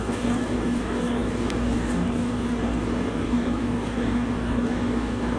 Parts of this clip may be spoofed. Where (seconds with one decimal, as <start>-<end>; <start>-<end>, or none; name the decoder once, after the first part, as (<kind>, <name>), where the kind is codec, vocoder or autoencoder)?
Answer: 0.0-5.4 (codec, DAC)